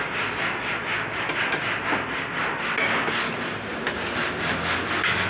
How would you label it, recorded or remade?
recorded